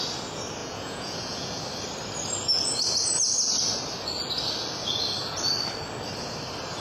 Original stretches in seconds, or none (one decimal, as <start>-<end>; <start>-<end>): 0.0-0.6; 1.6-6.8